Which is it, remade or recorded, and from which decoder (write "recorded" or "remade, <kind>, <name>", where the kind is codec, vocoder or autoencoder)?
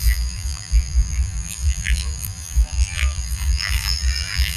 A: remade, vocoder, BigVGAN v2